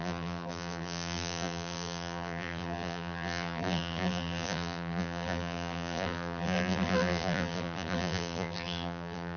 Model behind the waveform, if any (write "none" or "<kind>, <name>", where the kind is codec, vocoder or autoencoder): vocoder, BigVGAN v2